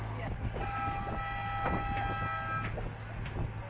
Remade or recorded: recorded